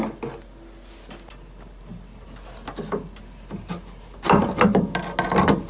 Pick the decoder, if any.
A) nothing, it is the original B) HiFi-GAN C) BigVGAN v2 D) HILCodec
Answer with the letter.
A